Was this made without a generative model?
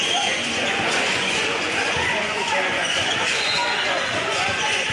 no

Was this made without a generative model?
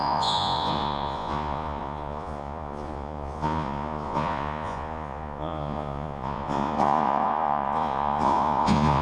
no